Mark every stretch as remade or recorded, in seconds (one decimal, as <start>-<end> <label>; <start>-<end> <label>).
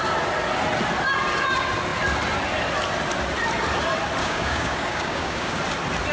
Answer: 0.0-4.2 recorded; 4.2-5.6 remade; 5.6-6.1 recorded